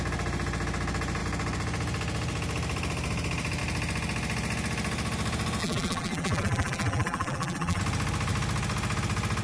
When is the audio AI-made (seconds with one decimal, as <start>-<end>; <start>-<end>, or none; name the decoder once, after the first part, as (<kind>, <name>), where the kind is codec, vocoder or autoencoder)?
5.6-7.8 (vocoder, BigVGAN v2)

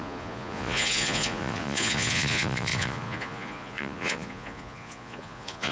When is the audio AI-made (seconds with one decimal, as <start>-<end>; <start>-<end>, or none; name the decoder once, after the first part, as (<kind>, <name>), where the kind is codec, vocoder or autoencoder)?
0.0-5.7 (vocoder, Vocos)

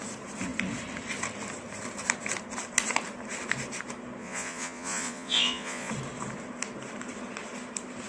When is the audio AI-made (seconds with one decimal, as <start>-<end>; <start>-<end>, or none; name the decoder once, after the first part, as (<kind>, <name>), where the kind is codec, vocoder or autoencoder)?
4.2-5.9 (vocoder, Vocos)

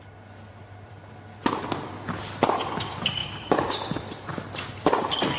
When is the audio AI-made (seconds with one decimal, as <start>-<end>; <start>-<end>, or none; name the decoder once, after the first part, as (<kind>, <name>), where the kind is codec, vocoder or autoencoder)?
1.4-1.9 (vocoder, BigVGAN v2); 3.2-3.9

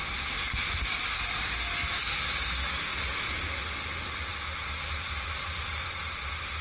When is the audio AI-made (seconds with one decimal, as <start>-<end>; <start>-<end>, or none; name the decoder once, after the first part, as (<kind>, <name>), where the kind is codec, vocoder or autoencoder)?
0.8-2.9 (codec, DAC)

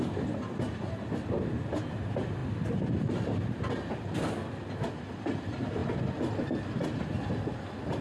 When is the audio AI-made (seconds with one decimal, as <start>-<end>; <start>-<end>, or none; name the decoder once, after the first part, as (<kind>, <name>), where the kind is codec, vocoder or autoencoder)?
none

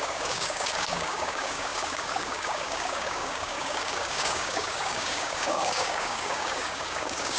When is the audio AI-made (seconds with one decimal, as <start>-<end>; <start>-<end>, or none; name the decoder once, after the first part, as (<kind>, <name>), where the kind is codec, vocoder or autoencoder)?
0.0-7.4 (codec, DAC)